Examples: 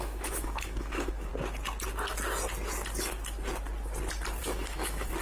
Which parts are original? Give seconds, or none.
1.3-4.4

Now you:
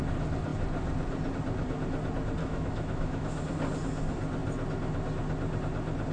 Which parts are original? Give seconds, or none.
0.0-2.4; 3.4-6.1

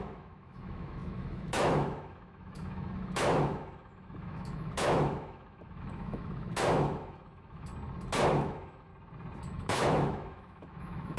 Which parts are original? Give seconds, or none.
7.7-8.3; 8.9-9.4